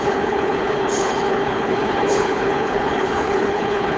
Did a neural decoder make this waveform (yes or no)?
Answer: yes